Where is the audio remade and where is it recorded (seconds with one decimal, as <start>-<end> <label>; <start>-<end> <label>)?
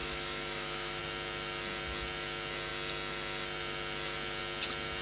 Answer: 0.0-1.0 remade; 1.0-5.0 recorded